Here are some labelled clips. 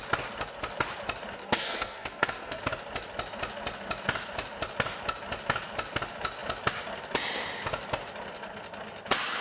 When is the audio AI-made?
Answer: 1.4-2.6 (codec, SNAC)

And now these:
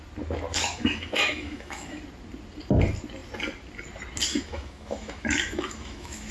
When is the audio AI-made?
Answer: 0.5-2.0 (autoencoder, DAC-VAE); 4.3-6.3